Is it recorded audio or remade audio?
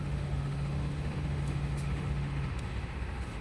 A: remade